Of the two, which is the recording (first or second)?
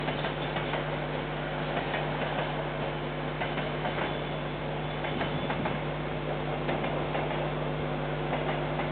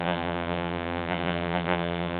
first